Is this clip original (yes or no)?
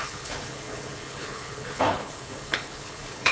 no